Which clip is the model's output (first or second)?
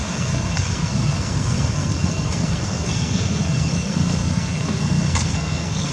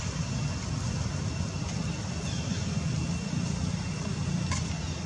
first